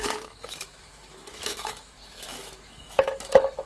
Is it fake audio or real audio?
fake